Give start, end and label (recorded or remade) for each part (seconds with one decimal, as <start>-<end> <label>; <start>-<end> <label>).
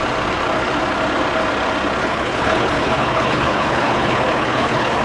0.0-2.0 recorded; 2.0-5.0 remade